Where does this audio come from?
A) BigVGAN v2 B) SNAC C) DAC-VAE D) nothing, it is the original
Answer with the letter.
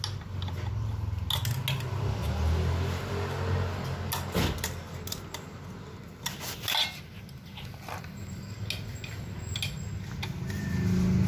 D